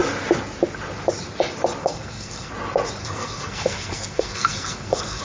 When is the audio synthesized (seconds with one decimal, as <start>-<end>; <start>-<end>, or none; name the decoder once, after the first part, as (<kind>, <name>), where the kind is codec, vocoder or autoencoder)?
1.8-2.5 (codec, SNAC); 3.0-5.2